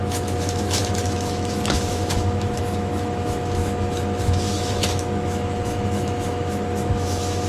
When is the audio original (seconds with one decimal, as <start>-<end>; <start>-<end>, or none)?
none